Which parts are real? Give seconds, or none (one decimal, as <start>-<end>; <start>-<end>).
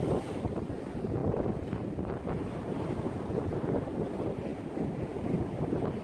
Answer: 0.0-6.0